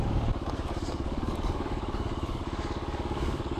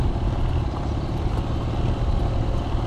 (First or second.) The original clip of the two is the second